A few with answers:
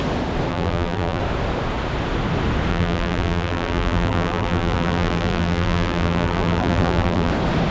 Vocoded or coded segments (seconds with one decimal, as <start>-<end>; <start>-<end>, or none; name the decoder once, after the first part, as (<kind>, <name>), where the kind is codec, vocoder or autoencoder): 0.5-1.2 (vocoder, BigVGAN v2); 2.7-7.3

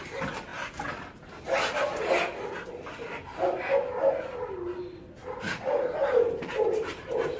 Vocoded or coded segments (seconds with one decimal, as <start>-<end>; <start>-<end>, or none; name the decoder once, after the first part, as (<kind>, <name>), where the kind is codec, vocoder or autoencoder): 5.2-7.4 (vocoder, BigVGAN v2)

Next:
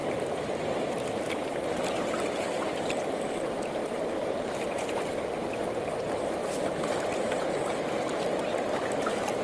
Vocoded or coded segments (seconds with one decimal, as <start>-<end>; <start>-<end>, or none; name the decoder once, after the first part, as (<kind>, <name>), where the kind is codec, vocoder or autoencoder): none